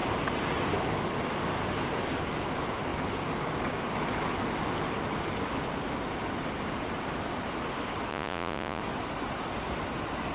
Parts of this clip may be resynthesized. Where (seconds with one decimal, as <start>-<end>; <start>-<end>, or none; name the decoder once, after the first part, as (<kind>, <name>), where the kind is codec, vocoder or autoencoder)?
8.1-8.8 (vocoder, Vocos)

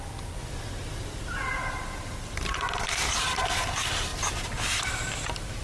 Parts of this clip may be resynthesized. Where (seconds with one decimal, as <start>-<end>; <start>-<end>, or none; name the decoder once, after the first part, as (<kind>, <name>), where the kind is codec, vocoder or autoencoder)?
0.8-3.2 (vocoder, BigVGAN v2); 4.1-5.1

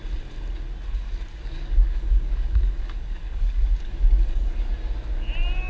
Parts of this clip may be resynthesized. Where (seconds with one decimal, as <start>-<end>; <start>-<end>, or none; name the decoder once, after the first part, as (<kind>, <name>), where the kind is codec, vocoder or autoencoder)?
1.3-4.7 (codec, DAC)

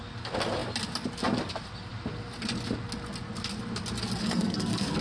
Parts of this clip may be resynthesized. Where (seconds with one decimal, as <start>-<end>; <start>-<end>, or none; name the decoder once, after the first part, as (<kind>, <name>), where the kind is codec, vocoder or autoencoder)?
4.2-5.0 (codec, SNAC)

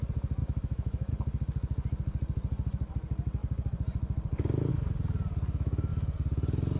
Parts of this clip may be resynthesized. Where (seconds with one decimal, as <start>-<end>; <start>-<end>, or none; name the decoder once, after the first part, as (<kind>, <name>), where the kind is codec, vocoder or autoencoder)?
0.4-1.1 (autoencoder, DAC-VAE)

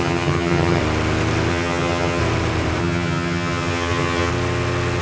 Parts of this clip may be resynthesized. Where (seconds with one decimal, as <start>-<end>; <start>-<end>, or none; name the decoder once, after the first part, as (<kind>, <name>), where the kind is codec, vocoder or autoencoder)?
0.0-0.8 (vocoder, HiFi-GAN); 1.5-2.2; 2.8-4.3